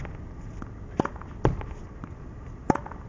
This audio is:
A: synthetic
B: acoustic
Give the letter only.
B